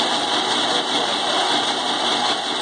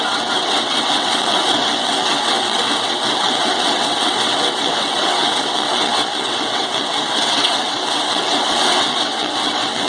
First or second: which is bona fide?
first